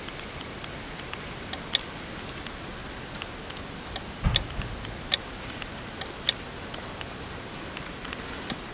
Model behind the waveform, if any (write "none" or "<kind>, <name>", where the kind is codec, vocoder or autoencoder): none